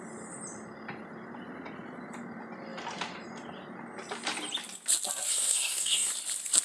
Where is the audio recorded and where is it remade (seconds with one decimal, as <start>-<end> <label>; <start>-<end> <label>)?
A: 0.0-5.3 recorded; 5.3-6.1 remade; 6.1-6.6 recorded